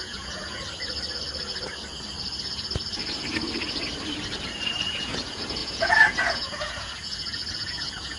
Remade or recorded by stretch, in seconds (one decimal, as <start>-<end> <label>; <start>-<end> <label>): 0.0-0.6 remade; 0.6-4.8 recorded; 4.8-8.2 remade

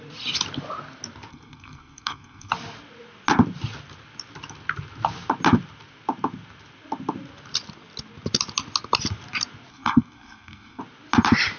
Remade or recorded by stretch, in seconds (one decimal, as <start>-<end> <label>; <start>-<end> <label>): 0.0-1.3 recorded; 1.3-2.5 remade; 2.5-9.7 recorded; 9.7-10.8 remade; 10.8-11.6 recorded